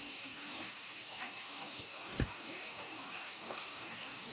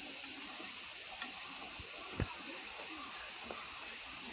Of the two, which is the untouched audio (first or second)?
second